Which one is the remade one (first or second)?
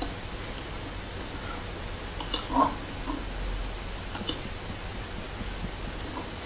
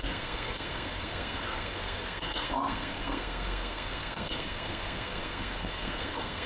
second